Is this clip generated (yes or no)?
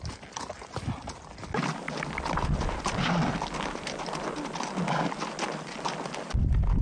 no